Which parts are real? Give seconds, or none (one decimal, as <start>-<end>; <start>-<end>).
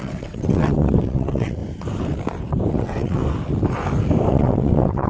1.6-2.7; 3.2-4.3